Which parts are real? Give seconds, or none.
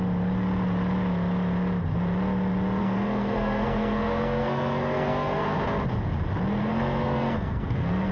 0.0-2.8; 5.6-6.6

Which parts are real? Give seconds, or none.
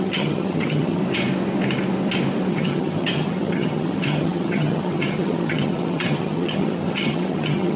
1.0-2.5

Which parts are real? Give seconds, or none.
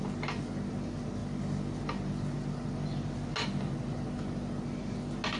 0.0-5.4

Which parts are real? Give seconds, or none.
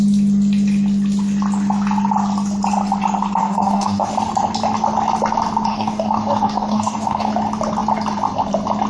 0.0-3.4; 4.1-5.7; 7.3-8.9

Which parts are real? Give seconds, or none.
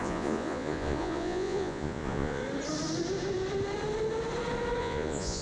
2.4-4.8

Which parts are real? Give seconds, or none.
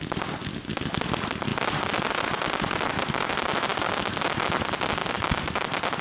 0.0-6.0